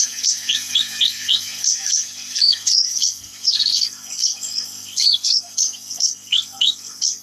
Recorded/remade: remade